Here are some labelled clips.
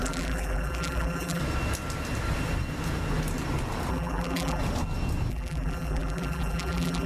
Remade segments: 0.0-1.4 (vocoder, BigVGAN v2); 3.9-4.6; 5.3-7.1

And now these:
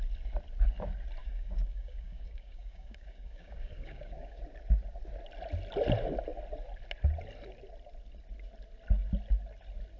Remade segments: 1.2-4.4 (codec, DAC)

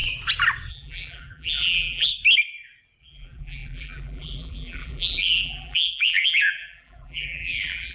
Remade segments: 0.7-2.1 (vocoder, BigVGAN v2); 3.0-7.9

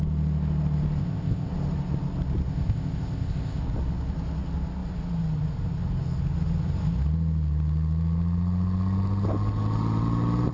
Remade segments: 1.0-1.5 (codec, ZipCodec); 2.5-3.6

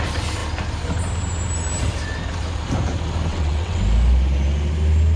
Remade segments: 3.3-3.8 (vocoder, WaveNeXt)

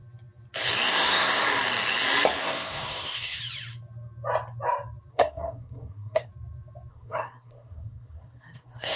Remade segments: 0.9-1.4 (codec, SNAC); 2.4-3.4; 5.1-6.3; 6.9-9.0